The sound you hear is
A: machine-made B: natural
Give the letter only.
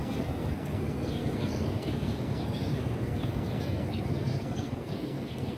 A